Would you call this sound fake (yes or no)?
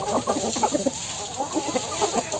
no